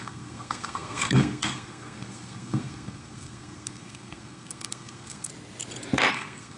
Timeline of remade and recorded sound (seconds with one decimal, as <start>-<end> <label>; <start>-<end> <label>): 0.0-5.3 remade; 5.3-6.1 recorded; 6.1-6.6 remade